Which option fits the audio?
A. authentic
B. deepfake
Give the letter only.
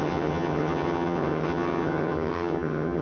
B